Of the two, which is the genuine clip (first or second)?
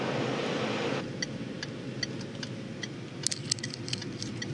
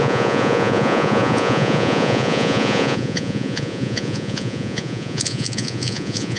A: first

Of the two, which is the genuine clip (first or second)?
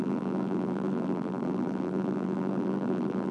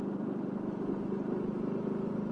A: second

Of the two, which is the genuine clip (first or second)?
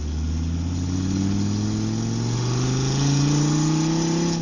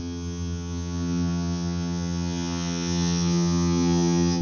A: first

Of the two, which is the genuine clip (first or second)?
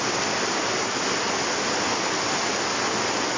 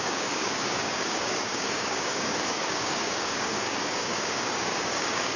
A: first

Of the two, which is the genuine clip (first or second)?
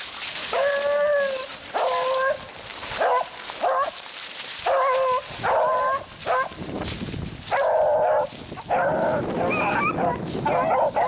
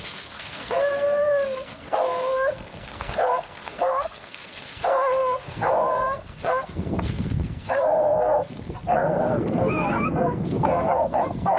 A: first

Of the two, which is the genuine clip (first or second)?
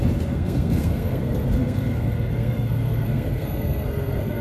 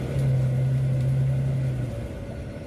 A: second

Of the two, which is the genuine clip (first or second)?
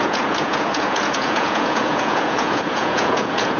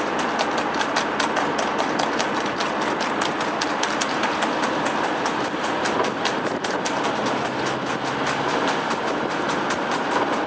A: second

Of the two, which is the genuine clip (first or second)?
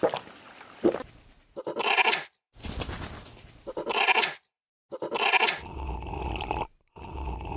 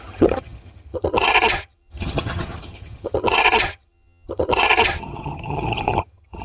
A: first